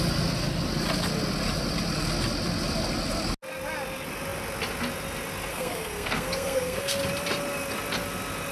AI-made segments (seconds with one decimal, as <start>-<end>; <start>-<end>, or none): 5.5-7.0